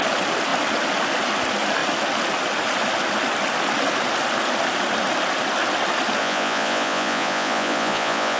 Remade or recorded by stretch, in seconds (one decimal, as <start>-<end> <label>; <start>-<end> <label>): 0.0-6.2 recorded; 6.2-8.4 remade